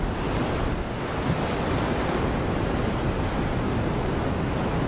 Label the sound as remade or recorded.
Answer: recorded